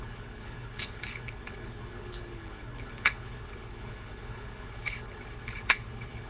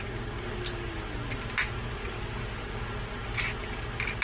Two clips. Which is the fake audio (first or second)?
first